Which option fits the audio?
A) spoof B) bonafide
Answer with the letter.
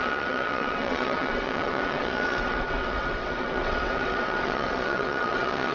A